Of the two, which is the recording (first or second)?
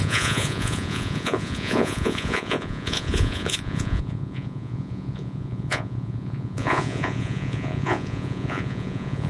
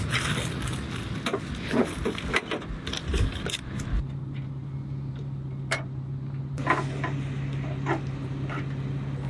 second